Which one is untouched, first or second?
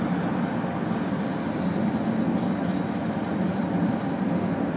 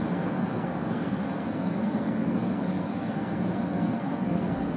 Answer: first